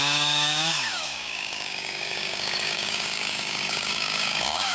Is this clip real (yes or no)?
no